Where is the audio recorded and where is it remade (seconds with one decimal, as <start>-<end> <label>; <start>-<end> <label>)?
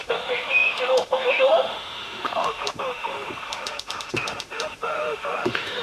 0.0-5.8 remade